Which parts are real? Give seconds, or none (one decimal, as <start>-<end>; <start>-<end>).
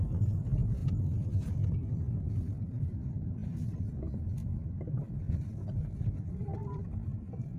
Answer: 0.0-0.8; 5.3-6.4